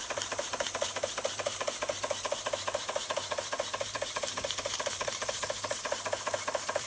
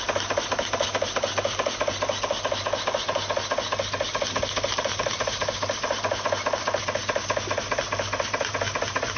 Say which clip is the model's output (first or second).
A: first